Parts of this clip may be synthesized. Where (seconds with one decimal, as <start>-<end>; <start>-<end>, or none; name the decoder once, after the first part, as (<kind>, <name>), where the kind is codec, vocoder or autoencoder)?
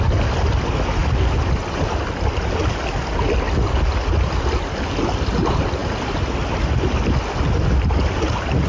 none